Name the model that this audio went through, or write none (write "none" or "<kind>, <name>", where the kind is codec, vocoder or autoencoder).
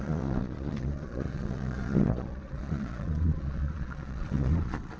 vocoder, Vocos